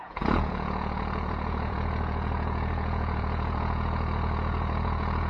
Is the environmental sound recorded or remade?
remade